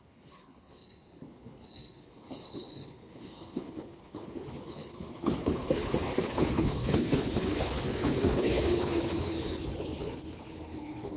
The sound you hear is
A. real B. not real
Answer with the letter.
B